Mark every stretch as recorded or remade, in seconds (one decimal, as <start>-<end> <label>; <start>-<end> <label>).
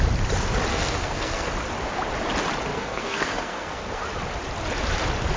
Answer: 0.0-0.7 recorded; 0.7-1.5 remade; 1.5-2.7 recorded; 2.7-4.0 remade; 4.0-5.4 recorded